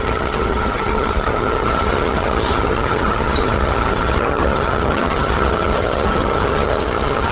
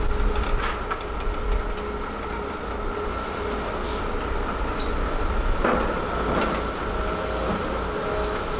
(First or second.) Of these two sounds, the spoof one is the first